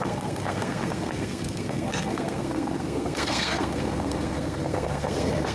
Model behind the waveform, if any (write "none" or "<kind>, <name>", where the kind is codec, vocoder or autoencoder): codec, SNAC